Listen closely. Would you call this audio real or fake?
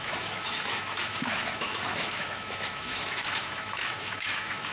fake